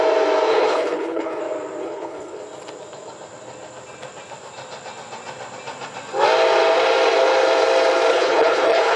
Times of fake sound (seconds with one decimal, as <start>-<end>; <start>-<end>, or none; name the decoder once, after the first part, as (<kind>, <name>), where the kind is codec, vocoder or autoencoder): 0.5-1.4 (codec, HILCodec); 1.8-2.4; 8.1-9.0